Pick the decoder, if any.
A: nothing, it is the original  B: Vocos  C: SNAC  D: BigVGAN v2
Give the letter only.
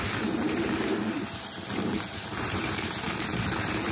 D